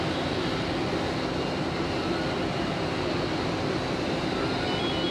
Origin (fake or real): real